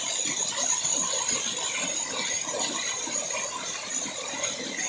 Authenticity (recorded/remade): recorded